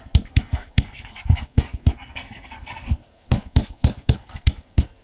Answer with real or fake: fake